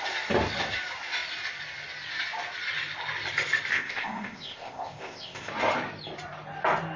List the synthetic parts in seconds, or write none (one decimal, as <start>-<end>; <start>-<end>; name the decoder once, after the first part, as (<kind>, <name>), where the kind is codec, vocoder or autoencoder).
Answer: 3.7-5.5 (codec, ZipCodec)